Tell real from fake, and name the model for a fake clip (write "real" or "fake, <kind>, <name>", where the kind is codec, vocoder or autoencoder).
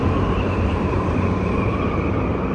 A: fake, vocoder, BigVGAN v2